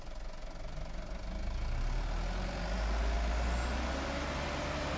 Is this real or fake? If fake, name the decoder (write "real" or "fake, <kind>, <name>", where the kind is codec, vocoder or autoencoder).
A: real